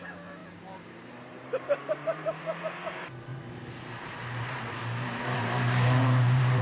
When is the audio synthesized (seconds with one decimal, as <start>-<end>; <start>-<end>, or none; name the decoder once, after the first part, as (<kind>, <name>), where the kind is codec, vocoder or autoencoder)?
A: 0.4-2.6 (vocoder, BigVGAN v2); 3.3-6.6